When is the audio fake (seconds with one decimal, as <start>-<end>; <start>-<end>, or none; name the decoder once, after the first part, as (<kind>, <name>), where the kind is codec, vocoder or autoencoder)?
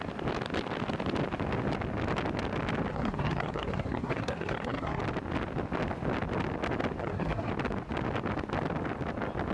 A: 2.9-5.0 (codec, SNAC); 7.0-7.5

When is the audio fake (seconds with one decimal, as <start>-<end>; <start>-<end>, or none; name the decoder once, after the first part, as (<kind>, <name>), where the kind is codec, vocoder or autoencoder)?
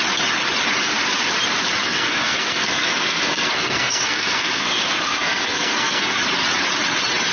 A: 1.8-6.2 (codec, SNAC)